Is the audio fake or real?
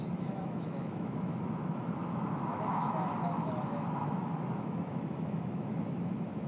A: fake